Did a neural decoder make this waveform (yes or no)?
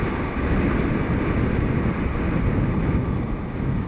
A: no